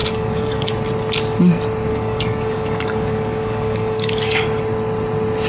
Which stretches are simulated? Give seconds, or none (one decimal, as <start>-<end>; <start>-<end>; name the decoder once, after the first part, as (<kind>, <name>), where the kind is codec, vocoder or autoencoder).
0.0-0.7 (codec, DAC); 1.9-4.4